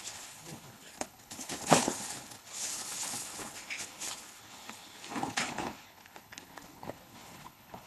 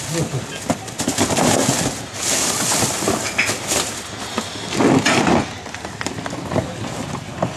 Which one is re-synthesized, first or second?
first